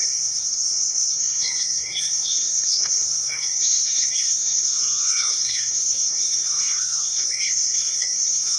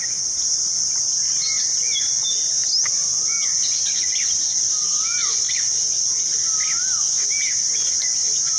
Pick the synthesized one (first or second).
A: first